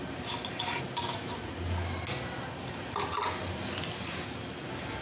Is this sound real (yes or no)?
yes